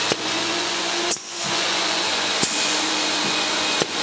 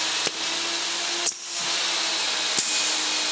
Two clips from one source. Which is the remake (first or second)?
first